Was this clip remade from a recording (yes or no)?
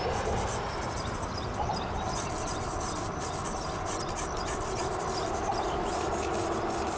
no